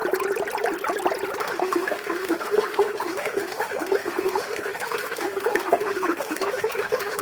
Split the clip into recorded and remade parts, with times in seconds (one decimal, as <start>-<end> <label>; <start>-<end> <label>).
0.0-1.4 recorded; 1.4-7.2 remade